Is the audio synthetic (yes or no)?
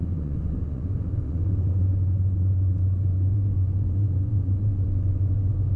yes